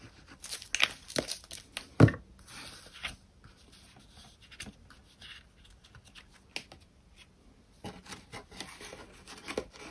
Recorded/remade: recorded